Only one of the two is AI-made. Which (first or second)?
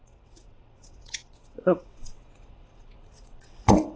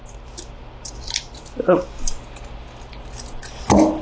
first